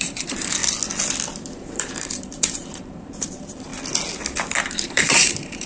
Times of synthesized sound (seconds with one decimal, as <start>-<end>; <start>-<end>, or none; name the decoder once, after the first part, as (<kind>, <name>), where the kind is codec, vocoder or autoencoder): 0.0-0.6 (vocoder, BigVGAN v2); 1.6-3.7; 4.7-5.7